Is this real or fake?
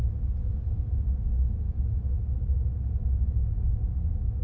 real